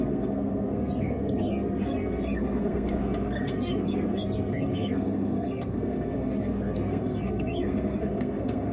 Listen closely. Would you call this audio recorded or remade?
remade